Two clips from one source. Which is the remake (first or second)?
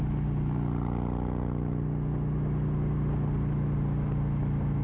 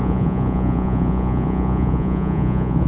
second